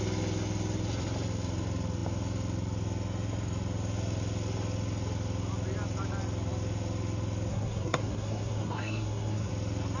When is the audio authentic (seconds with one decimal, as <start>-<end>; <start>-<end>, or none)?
0.0-7.5; 9.5-10.0

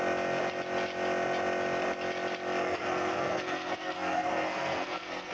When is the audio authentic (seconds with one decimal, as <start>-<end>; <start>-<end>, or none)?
0.0-2.6